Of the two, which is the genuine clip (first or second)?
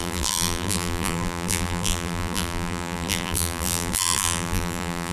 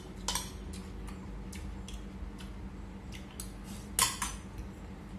second